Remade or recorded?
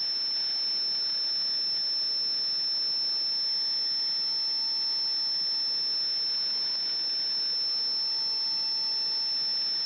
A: recorded